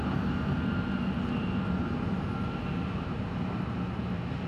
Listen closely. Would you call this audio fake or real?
real